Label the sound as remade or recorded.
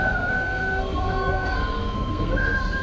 remade